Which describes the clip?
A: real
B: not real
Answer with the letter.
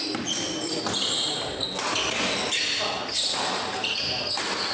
A